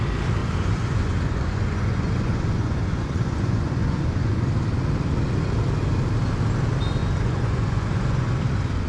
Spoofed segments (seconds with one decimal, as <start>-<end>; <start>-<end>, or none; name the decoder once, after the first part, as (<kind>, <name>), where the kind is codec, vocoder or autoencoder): 0.4-4.5 (vocoder, Vocos); 7.0-8.3